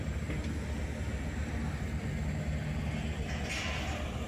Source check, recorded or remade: recorded